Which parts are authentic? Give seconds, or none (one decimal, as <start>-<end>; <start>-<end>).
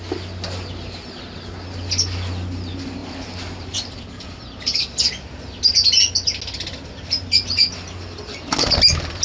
0.0-3.0; 4.0-9.2